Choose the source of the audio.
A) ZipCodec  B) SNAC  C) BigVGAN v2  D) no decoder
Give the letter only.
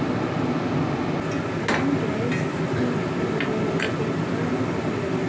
D